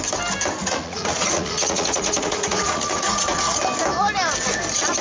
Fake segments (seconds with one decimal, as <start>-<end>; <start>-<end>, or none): 0.6-3.6